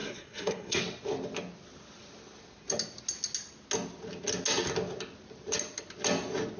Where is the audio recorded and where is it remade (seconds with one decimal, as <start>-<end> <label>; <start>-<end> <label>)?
0.0-0.8 remade; 0.8-6.6 recorded